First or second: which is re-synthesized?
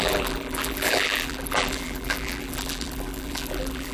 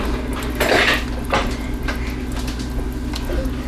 first